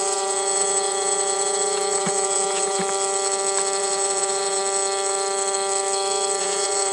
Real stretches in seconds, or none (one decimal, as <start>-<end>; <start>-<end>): 2.8-3.8; 4.6-6.4